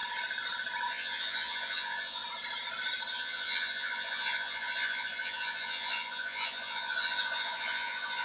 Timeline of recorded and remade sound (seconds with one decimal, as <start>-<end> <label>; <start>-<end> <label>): 0.0-0.9 recorded; 0.9-2.2 remade; 2.2-3.1 recorded; 3.1-8.2 remade